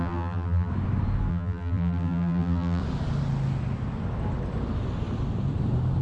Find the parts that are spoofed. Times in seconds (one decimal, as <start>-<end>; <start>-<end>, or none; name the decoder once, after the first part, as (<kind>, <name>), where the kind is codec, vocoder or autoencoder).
0.0-0.7 (vocoder, BigVGAN v2); 1.3-2.8